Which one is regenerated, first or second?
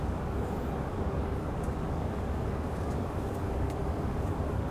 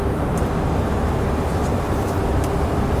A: first